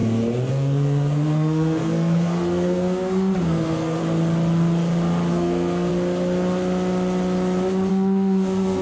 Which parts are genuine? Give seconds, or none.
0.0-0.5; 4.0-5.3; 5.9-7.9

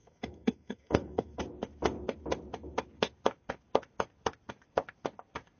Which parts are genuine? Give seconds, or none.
1.4-5.6

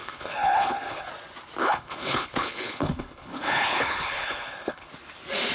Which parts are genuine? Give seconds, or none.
1.1-1.6; 4.9-5.5

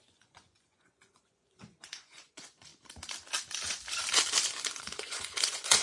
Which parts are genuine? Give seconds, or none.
2.7-4.7

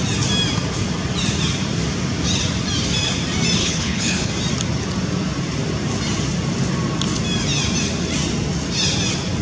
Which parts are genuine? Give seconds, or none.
0.0-3.6; 4.3-9.4

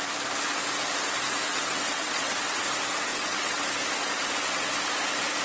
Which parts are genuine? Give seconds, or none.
0.0-1.5; 2.6-3.1; 3.6-5.4

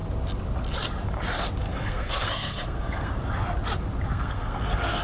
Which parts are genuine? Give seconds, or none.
0.0-1.6; 3.2-4.1

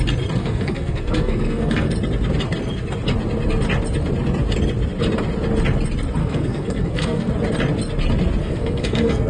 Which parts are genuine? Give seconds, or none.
0.0-0.4; 1.9-6.2; 7.3-8.4